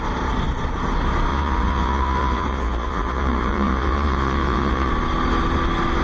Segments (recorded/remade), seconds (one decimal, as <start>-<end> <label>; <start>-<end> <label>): 0.0-1.3 recorded; 1.3-4.9 remade; 4.9-6.0 recorded